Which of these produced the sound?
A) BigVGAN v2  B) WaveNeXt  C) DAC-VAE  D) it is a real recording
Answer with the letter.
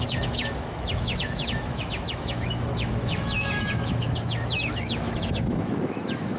C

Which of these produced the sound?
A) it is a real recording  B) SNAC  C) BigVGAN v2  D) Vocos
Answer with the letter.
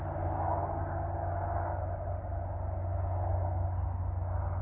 A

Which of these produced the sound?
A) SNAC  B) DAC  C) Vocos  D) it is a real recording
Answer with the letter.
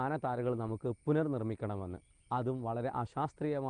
D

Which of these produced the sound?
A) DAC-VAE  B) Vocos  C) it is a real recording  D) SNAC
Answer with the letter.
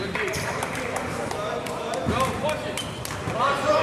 C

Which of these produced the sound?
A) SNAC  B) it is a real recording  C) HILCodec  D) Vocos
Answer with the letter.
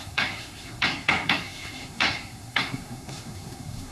A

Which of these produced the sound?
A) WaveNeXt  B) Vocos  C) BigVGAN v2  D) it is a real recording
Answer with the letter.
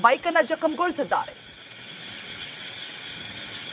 A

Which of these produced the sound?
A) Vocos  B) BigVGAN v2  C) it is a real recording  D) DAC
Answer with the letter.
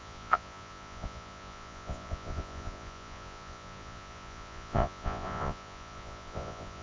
A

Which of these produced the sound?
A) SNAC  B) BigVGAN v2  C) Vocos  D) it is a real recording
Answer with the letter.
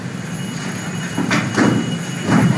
D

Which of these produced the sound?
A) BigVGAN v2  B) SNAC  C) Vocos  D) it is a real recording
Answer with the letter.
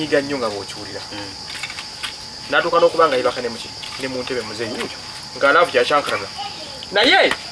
D